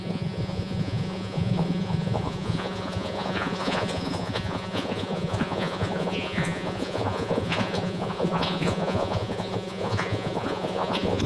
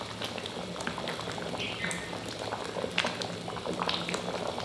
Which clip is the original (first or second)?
second